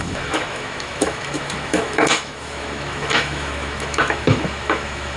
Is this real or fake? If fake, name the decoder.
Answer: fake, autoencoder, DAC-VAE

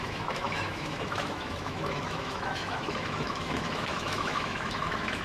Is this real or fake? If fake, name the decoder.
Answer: fake, autoencoder, DAC-VAE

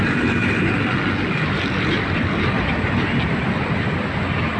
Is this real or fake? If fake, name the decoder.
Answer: real